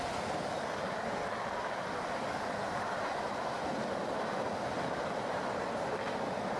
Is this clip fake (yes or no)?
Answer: no